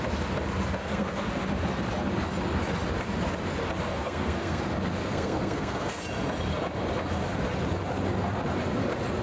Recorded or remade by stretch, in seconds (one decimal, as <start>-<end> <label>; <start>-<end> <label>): 0.0-0.8 recorded; 0.8-1.3 remade; 1.3-3.9 recorded; 3.9-4.6 remade; 4.6-5.0 recorded; 5.0-6.0 remade; 6.0-9.2 recorded